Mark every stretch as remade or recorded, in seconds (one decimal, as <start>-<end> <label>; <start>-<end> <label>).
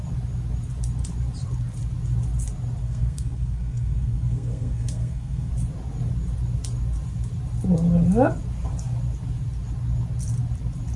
0.0-2.8 recorded; 2.8-5.5 remade; 5.5-11.0 recorded